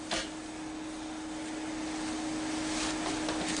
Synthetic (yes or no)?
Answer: no